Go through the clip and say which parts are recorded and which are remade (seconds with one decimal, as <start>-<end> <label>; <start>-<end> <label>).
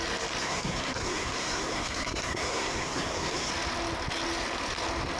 0.0-0.4 recorded; 0.4-3.5 remade; 3.5-5.2 recorded